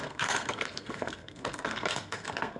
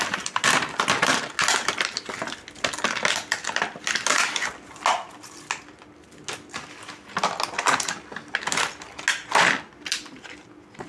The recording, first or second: second